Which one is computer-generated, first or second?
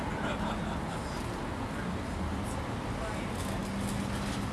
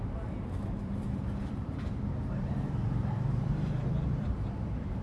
second